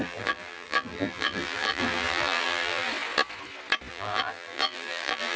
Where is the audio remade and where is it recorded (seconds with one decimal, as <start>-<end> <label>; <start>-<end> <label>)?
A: 0.0-2.9 remade; 2.9-3.9 recorded; 3.9-5.4 remade